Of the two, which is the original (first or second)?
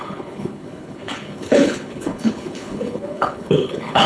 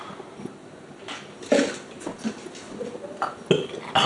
second